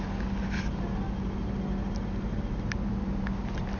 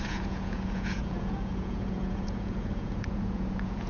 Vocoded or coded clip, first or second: second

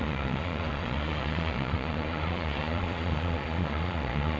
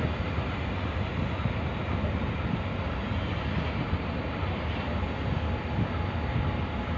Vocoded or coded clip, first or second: first